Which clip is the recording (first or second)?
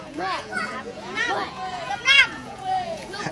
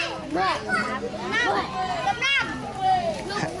second